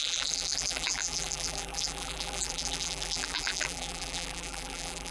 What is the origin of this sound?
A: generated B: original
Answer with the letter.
A